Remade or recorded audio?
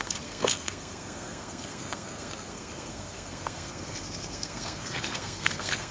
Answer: remade